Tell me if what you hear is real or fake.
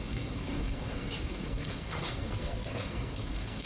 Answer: fake